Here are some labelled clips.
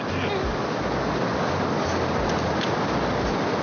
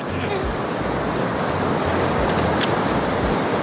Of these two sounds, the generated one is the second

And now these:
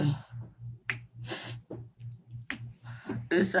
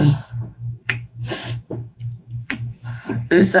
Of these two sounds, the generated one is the second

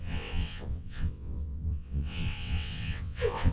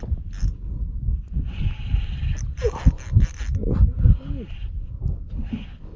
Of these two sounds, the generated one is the first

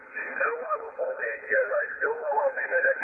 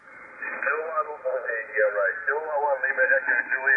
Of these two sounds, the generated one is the first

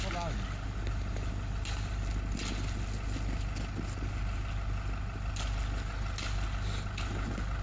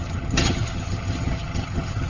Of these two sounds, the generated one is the second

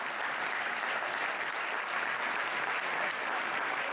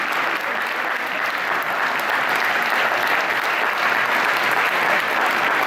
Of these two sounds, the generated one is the first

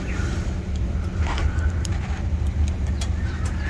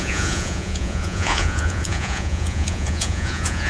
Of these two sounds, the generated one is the second